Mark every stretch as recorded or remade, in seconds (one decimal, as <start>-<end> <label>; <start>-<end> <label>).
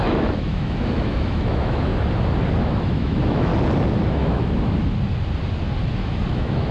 0.0-1.9 remade; 1.9-2.6 recorded; 2.6-3.5 remade; 3.5-4.1 recorded; 4.1-4.8 remade; 4.8-5.9 recorded; 5.9-6.7 remade